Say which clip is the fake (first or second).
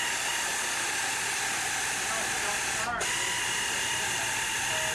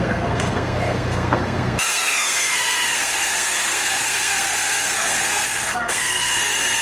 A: second